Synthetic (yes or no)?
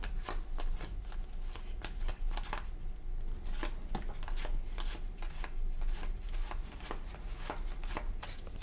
no